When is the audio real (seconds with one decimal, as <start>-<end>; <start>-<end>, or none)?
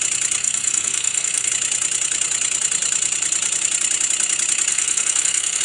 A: 0.0-0.4; 1.5-4.7